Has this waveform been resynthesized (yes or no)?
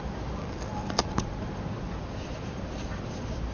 no